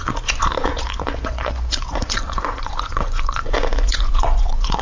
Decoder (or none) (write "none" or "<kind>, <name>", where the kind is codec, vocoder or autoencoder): vocoder, Vocos